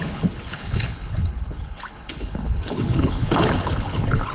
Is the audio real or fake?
fake